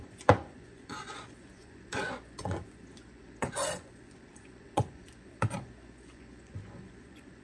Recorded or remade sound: remade